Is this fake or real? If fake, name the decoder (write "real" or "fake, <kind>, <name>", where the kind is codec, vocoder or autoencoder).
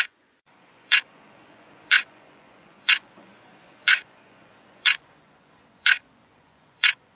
fake, vocoder, Vocos